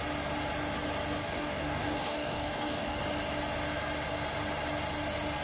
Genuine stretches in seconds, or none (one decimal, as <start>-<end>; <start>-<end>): 0.0-1.2; 3.0-5.4

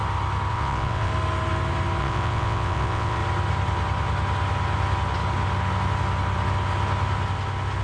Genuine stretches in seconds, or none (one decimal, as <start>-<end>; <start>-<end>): 0.0-0.5; 1.1-2.0; 3.2-7.8

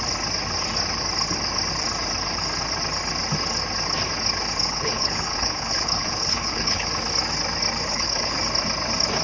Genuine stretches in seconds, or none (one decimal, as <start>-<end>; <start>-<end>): 0.0-4.6; 6.9-7.9; 8.4-9.2

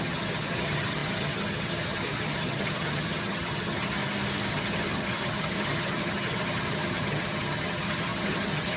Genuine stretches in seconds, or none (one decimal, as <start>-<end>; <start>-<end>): 4.0-4.5